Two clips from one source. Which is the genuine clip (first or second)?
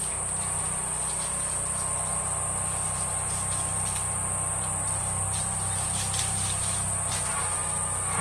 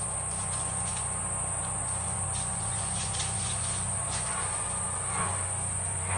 first